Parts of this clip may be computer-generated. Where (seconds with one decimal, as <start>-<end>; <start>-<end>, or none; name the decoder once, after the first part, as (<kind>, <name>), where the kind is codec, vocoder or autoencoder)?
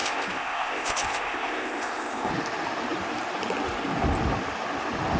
0.0-2.3 (codec, ZipCodec)